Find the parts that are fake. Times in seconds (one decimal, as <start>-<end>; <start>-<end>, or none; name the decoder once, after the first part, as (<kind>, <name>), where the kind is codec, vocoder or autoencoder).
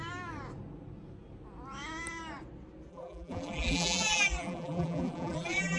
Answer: 2.9-5.8 (vocoder, BigVGAN v2)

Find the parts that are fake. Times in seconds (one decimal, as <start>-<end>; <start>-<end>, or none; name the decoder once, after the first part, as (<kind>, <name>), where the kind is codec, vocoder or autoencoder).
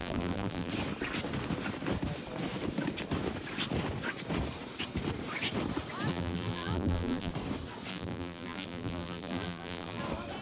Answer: 0.0-0.7 (vocoder, BigVGAN v2); 6.1-7.3; 7.9-10.0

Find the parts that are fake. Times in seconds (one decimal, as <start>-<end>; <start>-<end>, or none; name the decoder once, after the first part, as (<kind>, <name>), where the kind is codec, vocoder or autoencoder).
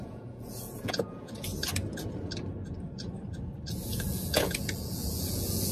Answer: 0.0-1.5 (vocoder, Vocos); 3.9-5.7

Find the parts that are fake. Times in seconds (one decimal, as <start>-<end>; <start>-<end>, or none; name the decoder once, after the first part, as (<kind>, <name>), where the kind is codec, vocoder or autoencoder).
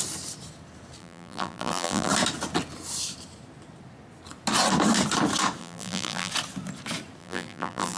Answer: 1.0-2.1 (vocoder, BigVGAN v2); 5.6-6.3; 7.2-8.0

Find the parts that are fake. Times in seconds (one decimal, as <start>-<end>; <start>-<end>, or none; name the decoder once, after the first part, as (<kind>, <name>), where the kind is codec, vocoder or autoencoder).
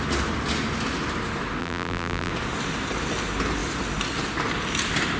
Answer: 1.6-2.3 (vocoder, BigVGAN v2)